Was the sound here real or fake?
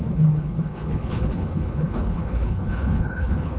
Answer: fake